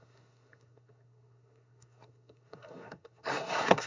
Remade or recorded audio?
remade